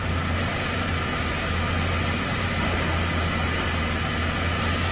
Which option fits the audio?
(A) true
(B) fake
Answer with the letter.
A